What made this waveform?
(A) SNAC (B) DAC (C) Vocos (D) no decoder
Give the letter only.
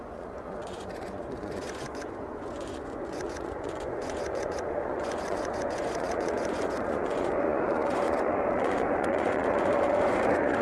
C